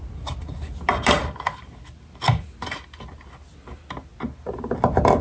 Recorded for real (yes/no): yes